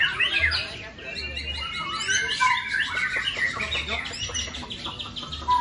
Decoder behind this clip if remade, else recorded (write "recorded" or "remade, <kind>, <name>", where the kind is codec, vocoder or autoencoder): recorded